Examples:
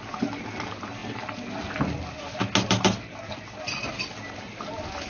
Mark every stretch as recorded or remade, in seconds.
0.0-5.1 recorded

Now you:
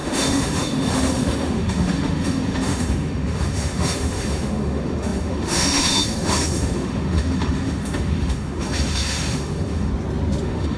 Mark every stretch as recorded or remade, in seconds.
0.0-9.9 remade; 9.9-10.4 recorded; 10.4-10.8 remade

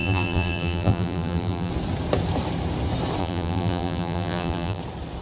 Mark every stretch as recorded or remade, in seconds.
0.0-1.7 remade; 1.7-3.2 recorded; 3.2-4.8 remade; 4.8-5.2 recorded

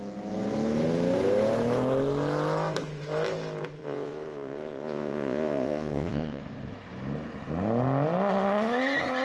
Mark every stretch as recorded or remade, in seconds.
0.0-3.8 recorded; 3.8-6.4 remade; 6.4-9.2 recorded